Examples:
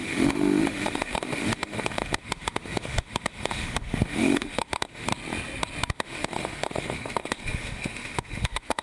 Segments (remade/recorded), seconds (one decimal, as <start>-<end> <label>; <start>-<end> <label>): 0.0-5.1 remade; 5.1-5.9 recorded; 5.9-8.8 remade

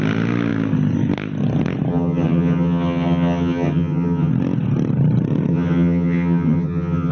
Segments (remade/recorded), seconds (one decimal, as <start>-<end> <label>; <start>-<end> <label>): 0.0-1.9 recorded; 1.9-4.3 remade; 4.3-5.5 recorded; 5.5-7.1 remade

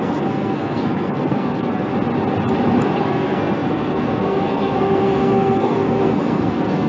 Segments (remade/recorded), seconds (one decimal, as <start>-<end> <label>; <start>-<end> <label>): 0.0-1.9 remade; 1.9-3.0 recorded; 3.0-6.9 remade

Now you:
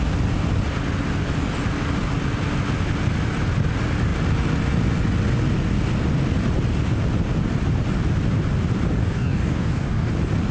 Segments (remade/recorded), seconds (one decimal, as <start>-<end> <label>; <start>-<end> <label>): 0.0-9.0 recorded; 9.0-10.1 remade; 10.1-10.5 recorded